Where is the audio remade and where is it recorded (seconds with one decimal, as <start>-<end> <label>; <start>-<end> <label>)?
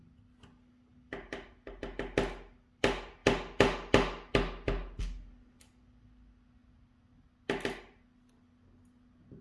0.0-9.4 recorded